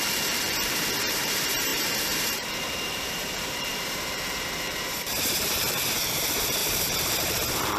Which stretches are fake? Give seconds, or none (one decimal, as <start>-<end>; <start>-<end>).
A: 0.0-7.8